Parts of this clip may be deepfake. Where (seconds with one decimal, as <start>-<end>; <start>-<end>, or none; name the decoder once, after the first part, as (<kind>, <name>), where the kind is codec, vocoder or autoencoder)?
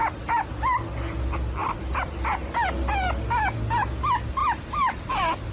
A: 1.6-2.7 (vocoder, BigVGAN v2); 4.4-5.1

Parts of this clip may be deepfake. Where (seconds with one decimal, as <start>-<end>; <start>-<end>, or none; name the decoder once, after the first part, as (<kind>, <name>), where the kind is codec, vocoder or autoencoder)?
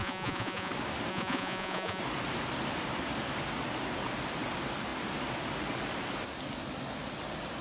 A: 0.0-0.7 (vocoder, Vocos); 1.1-2.0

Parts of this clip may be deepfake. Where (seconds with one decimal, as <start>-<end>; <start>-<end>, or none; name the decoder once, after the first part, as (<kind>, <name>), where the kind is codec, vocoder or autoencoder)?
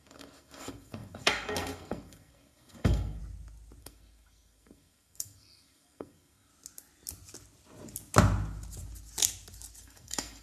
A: 0.0-3.2 (codec, SNAC); 3.8-6.5; 9.8-10.4